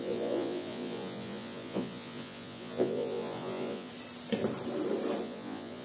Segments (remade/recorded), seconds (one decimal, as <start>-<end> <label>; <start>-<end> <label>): 0.0-3.9 remade; 3.9-5.2 recorded; 5.2-5.8 remade